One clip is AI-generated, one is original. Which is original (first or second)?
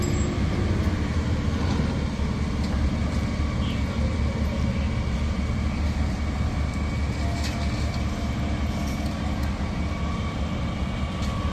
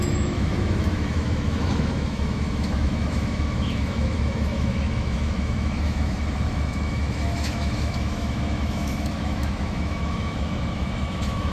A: first